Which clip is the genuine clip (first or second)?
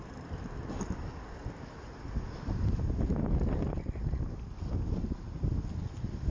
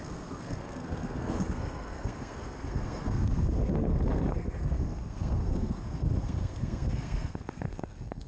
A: first